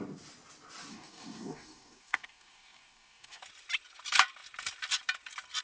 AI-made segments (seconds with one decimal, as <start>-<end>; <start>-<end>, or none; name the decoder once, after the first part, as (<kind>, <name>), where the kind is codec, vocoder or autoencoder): 0.9-3.4 (codec, DAC)